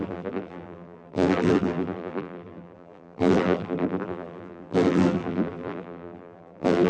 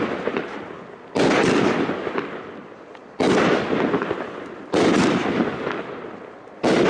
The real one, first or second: second